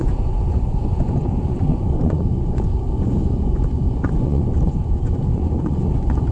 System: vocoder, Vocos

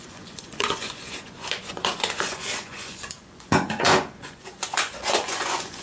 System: vocoder, Vocos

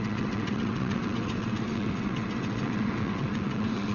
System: vocoder, WaveNeXt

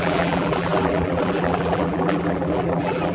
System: vocoder, BigVGAN v2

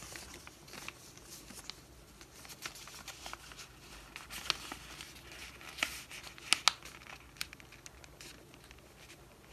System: none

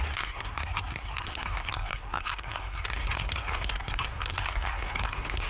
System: codec, SNAC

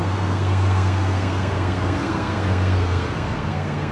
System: codec, SNAC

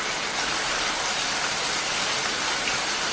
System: none